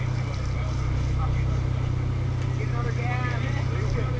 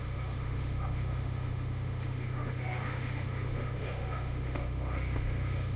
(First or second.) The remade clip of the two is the second